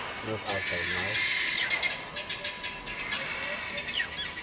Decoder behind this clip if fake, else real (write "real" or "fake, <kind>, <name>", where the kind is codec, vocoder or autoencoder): real